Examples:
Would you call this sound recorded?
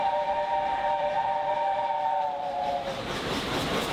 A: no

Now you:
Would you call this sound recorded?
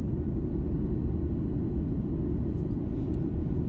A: yes